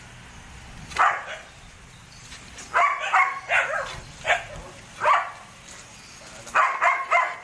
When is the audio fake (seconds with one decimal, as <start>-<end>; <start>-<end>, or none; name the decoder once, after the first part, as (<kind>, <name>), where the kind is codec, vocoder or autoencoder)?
none